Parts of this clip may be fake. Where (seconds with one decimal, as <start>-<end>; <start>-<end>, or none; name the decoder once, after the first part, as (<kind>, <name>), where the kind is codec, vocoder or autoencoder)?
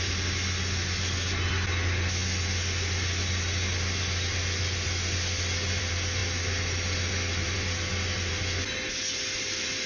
none